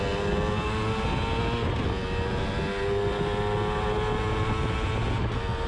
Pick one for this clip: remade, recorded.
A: recorded